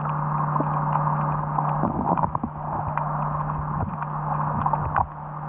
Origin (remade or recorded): recorded